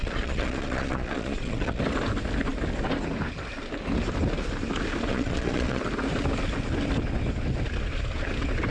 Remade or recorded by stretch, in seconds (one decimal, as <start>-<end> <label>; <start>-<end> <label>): 0.0-1.8 remade; 1.8-5.1 recorded; 5.1-5.8 remade; 5.8-8.7 recorded